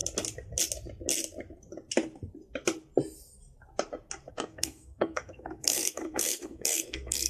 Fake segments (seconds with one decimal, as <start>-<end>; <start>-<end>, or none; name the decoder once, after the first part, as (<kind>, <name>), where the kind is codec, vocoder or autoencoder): 4.3-7.3 (codec, SNAC)